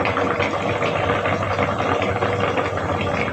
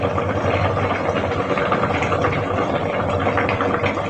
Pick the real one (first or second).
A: first